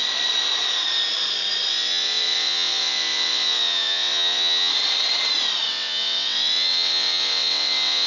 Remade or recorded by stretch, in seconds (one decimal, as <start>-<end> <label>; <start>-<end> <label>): 0.0-1.7 recorded; 1.7-4.7 remade; 4.7-5.7 recorded; 5.7-8.1 remade